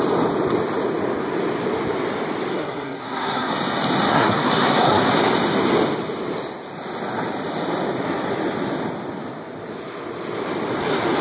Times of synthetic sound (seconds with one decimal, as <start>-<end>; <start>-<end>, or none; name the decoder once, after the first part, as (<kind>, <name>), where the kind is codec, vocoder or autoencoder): 2.5-3.5 (codec, SNAC); 4.1-5.1